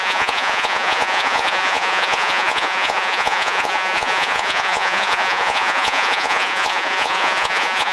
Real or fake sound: fake